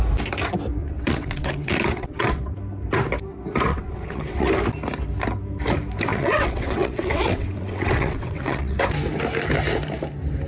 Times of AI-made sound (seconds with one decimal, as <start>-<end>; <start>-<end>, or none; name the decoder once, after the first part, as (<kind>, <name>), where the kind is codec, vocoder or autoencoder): 0.8-2.5 (vocoder, WaveNeXt); 3.7-4.5; 6.1-8.8